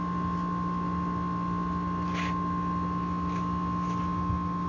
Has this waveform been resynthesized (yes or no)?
no